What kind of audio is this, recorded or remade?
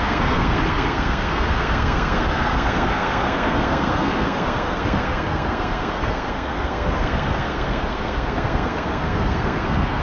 remade